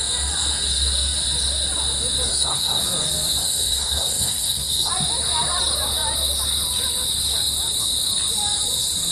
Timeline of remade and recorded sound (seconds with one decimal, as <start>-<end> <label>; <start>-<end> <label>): 0.0-2.3 recorded; 2.3-2.8 remade; 2.8-3.4 recorded; 3.4-4.9 remade; 4.9-9.1 recorded